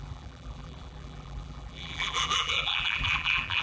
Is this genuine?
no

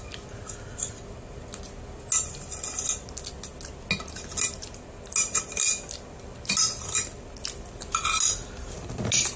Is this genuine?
yes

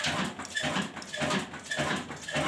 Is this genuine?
yes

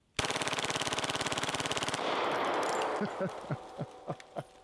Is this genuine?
yes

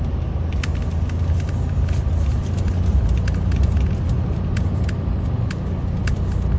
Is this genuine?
yes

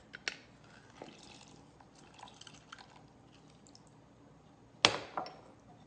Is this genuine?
yes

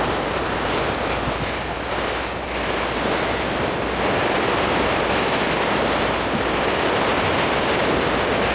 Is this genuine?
yes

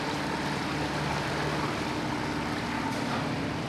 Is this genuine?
yes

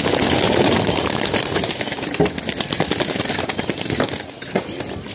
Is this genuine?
yes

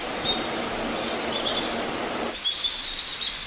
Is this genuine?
yes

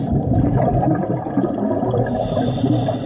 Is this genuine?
no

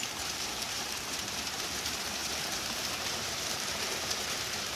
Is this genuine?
no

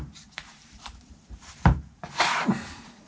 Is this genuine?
no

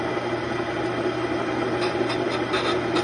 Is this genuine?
yes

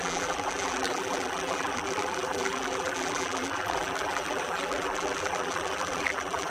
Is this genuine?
no